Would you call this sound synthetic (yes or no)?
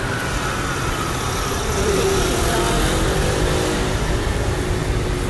no